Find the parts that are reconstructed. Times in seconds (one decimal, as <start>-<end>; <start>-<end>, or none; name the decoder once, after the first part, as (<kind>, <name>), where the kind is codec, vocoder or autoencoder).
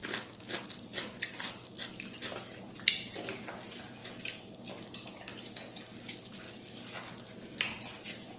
0.0-1.3 (vocoder, BigVGAN v2); 4.0-4.7